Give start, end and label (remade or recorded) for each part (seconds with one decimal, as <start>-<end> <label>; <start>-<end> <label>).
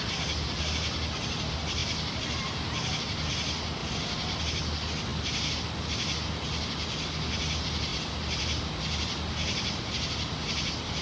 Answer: 0.0-11.0 recorded